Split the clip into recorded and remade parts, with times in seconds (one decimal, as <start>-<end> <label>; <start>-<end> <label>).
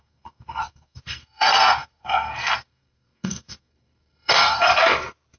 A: 0.0-4.7 remade; 4.7-5.4 recorded